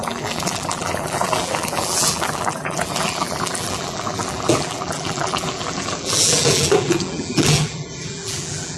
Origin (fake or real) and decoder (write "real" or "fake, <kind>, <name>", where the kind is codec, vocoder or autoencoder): fake, vocoder, BigVGAN v2